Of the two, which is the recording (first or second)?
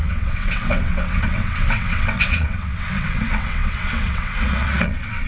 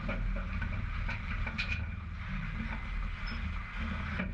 second